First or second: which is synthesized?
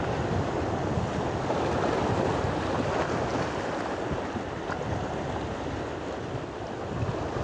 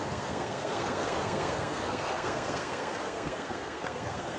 second